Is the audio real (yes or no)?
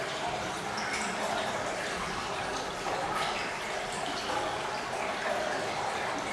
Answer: yes